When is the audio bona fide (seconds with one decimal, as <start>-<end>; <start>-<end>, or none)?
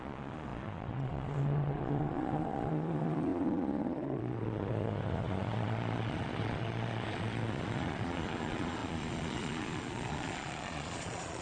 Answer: none